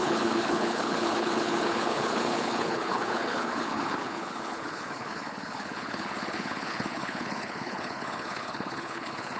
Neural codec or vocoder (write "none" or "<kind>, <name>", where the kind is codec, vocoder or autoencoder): codec, HILCodec